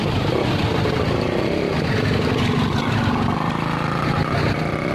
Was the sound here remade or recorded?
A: recorded